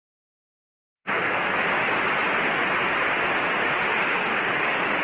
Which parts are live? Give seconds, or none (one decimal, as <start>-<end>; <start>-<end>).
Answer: 0.0-0.4; 1.4-3.9